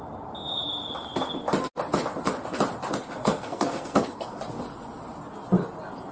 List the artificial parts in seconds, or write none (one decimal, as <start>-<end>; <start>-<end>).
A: 3.2-4.4